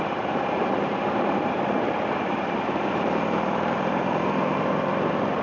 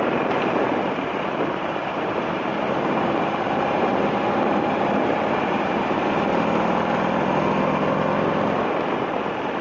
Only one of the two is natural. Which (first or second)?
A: second